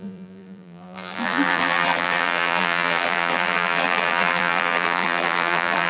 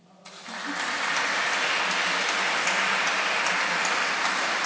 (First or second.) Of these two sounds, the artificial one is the first